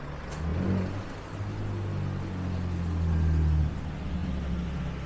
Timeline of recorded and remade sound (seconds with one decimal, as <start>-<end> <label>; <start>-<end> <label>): 0.0-5.1 recorded

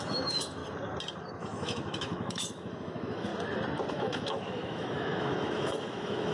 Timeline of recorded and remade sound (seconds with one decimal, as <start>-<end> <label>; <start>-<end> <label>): 0.0-0.6 remade; 0.6-1.3 recorded; 1.3-3.3 remade; 3.3-3.9 recorded; 3.9-6.3 remade

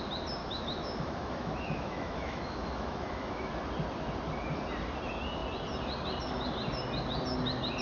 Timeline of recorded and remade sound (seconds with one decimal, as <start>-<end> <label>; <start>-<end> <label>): 0.0-0.4 recorded; 0.4-3.5 remade; 3.5-7.8 recorded

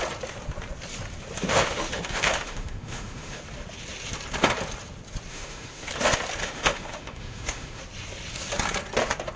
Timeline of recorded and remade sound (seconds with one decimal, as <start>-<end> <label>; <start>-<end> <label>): 0.0-1.5 recorded; 1.5-3.4 remade; 3.4-5.3 recorded; 5.3-5.9 remade; 5.9-6.4 recorded; 6.4-7.8 remade; 7.8-9.4 recorded

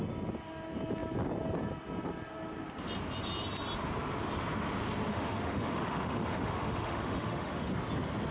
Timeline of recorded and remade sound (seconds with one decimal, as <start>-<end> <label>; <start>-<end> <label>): 0.0-5.1 recorded; 5.1-7.7 remade; 7.7-8.3 recorded

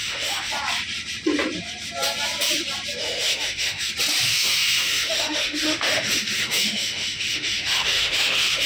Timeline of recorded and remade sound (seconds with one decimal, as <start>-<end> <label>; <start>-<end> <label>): 0.0-0.5 remade; 0.5-3.0 recorded; 3.0-3.9 remade; 3.9-4.3 recorded; 4.3-8.7 remade

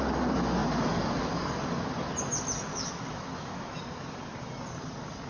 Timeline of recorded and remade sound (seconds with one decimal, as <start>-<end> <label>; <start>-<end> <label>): 0.0-2.7 recorded; 2.7-3.8 remade; 3.8-5.3 recorded

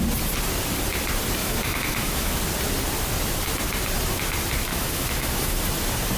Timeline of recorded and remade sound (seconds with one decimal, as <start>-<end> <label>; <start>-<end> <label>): 0.0-1.4 recorded; 1.4-2.3 remade; 2.3-4.7 recorded; 4.7-5.6 remade; 5.6-6.2 recorded